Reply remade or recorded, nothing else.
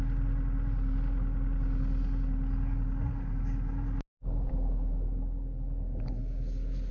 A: recorded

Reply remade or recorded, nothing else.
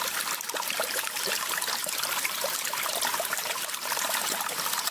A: remade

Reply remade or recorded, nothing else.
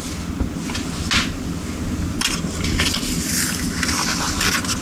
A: recorded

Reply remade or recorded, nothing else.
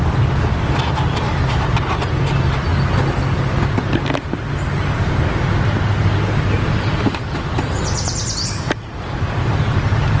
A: recorded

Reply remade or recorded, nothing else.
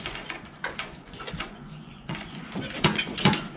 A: remade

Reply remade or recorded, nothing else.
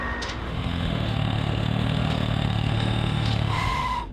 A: remade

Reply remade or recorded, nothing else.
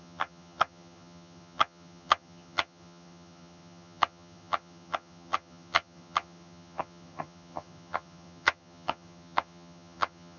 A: remade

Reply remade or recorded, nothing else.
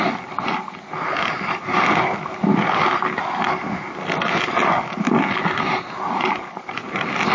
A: recorded